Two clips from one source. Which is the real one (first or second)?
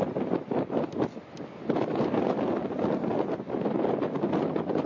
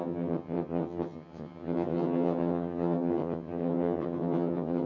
first